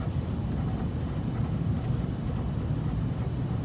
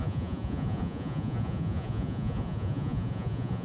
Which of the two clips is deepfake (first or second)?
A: second